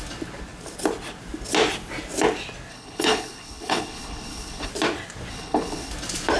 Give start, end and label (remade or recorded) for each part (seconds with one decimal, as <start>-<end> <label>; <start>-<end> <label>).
0.0-2.7 recorded; 2.7-4.7 remade; 4.7-5.3 recorded; 5.3-5.9 remade; 5.9-6.4 recorded